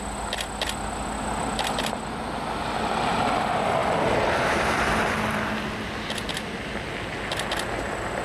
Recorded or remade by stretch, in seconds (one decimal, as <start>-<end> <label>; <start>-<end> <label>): 0.0-3.8 recorded; 3.8-4.3 remade; 4.3-8.2 recorded